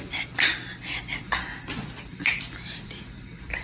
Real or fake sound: fake